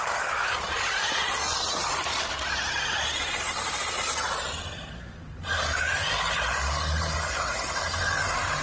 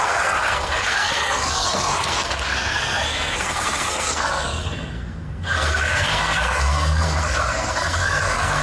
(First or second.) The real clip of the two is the first